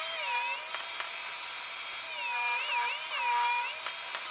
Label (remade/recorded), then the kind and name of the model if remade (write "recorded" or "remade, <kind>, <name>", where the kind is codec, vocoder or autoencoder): recorded